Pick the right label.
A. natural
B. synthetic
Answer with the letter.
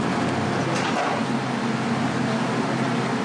A